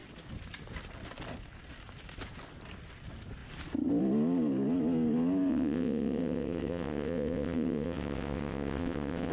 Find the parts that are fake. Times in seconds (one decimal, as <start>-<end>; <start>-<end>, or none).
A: 5.5-9.3